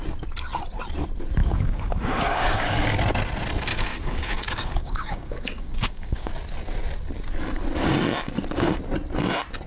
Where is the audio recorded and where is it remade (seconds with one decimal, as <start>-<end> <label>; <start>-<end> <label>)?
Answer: 0.0-1.4 recorded; 1.4-3.0 remade; 3.0-3.7 recorded; 3.7-6.3 remade; 6.3-9.7 recorded